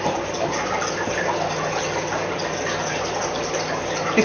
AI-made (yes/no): no